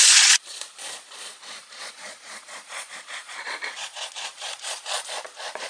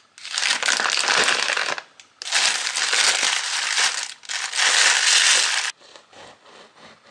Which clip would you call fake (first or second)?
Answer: first